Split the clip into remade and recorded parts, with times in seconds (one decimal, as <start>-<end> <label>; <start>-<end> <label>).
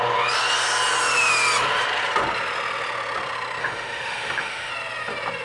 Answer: 0.0-3.6 recorded; 3.6-4.7 remade; 4.7-5.4 recorded